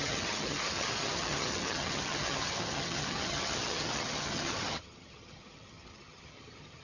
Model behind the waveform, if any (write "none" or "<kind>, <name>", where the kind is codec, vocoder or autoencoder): vocoder, HiFi-GAN